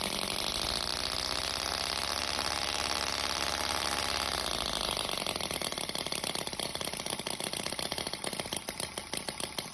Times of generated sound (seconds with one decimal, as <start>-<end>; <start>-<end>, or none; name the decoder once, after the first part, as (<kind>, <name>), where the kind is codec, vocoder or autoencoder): none